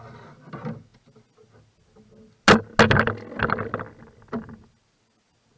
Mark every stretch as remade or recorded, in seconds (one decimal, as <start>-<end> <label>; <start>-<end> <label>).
0.0-5.6 recorded